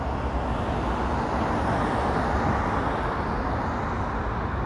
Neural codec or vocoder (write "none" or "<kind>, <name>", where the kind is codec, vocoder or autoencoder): none